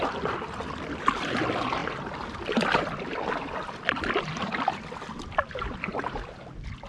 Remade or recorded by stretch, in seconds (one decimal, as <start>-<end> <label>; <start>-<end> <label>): 0.0-6.9 recorded